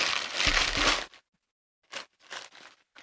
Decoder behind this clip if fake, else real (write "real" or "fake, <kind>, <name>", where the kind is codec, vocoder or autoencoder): real